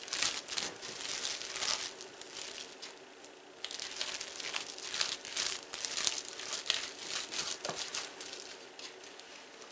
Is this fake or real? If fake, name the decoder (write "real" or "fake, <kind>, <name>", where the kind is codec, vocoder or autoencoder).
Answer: real